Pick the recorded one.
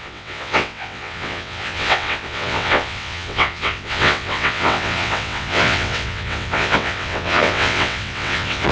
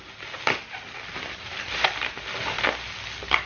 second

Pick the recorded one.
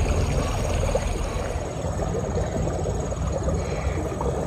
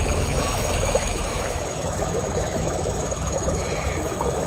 first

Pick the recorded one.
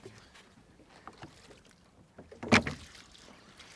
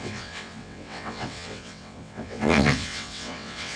first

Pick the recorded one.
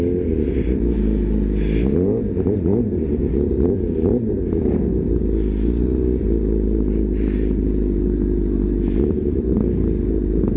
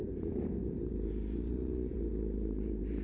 first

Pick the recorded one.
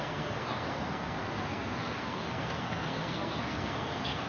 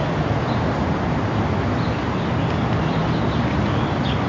second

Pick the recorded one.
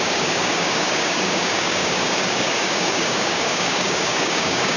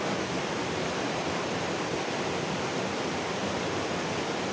second